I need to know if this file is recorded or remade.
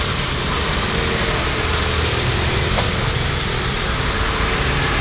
recorded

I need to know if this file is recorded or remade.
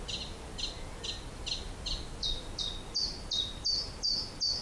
recorded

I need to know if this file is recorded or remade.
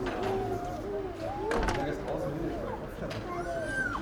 recorded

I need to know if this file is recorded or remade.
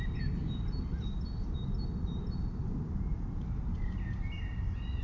recorded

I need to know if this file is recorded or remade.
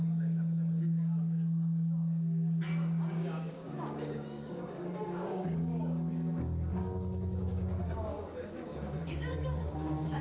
remade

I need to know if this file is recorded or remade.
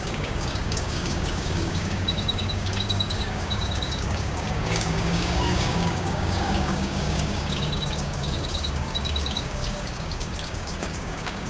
remade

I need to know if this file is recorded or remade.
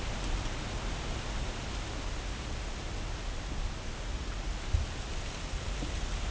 recorded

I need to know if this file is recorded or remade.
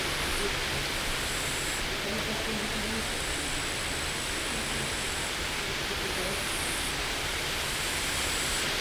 recorded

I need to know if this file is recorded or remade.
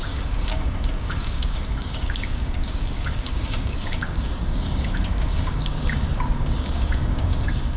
remade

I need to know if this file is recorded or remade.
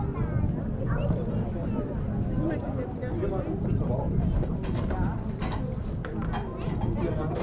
recorded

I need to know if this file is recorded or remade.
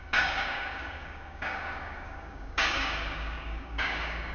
remade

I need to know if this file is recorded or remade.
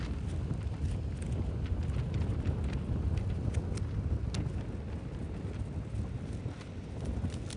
recorded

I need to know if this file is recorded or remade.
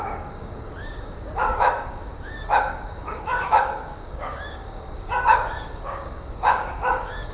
remade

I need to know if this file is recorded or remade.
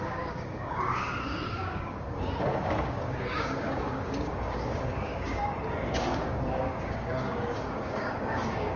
remade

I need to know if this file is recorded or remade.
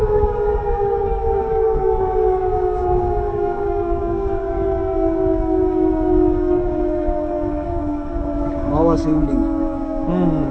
remade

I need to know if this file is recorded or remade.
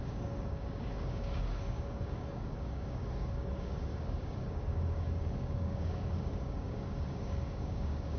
remade